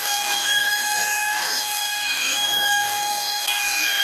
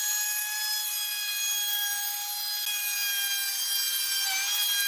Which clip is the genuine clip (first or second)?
second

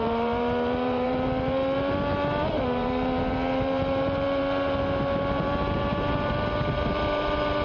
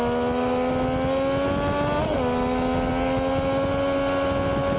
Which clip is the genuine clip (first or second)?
second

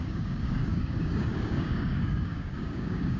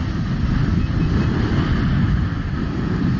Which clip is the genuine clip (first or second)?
second